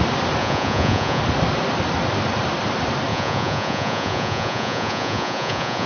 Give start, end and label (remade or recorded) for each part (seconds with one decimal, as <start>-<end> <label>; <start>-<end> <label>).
0.0-0.4 recorded; 0.4-1.2 remade; 1.2-3.1 recorded; 3.1-5.9 remade